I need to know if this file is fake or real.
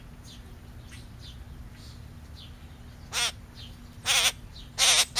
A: real